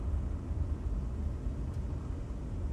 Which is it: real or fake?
real